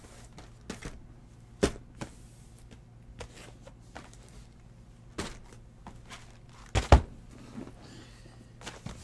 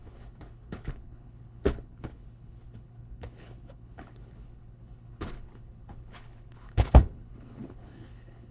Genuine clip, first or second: first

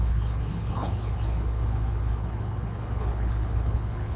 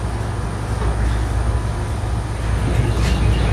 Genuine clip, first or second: second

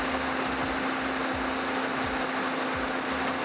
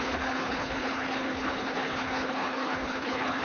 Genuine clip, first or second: first